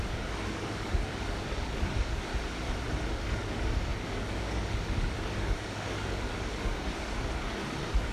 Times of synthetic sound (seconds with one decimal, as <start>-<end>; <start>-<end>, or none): 0.0-2.3; 3.1-8.1

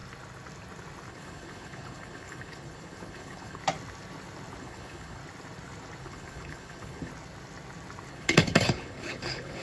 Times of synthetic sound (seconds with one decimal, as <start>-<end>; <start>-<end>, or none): 1.1-3.6; 4.6-5.2; 6.0-7.1; 8.1-9.6

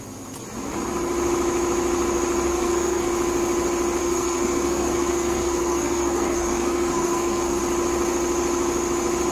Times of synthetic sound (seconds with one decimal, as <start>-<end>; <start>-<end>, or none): 2.5-3.1; 4.0-7.6